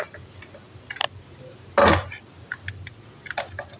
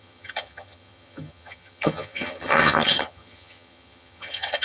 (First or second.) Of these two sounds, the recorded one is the first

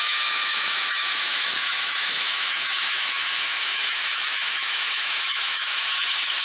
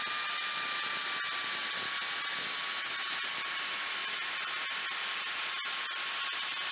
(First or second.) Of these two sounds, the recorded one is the second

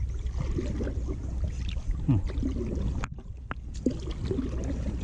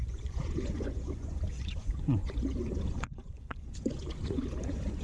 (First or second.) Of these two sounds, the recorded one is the first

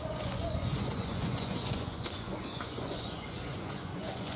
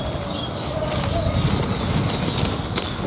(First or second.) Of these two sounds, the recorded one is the second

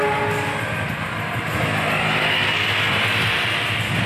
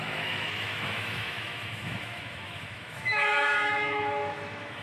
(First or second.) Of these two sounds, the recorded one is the first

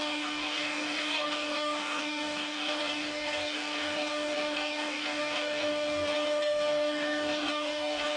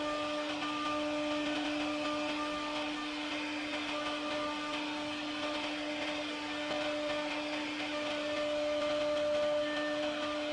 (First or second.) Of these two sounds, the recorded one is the second